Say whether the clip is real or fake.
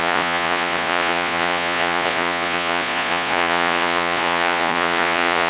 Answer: fake